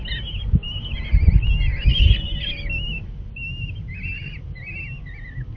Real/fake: real